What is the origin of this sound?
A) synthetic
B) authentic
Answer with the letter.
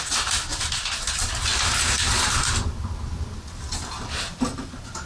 B